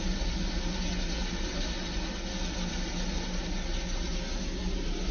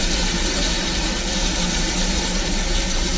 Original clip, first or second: first